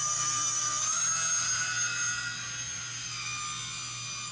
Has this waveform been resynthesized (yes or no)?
no